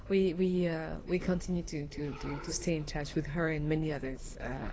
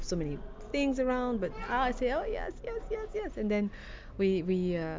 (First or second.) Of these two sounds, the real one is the second